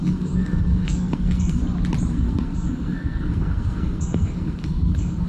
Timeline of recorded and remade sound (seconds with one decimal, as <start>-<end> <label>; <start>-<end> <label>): 0.0-1.6 remade; 1.6-2.1 recorded; 2.1-5.3 remade